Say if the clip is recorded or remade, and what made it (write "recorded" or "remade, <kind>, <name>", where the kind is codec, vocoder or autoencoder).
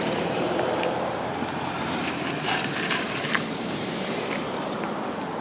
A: remade, vocoder, BigVGAN v2